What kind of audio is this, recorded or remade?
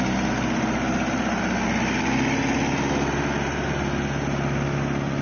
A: recorded